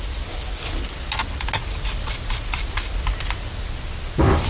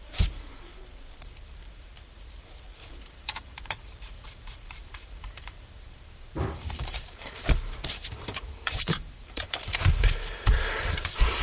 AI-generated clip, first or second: second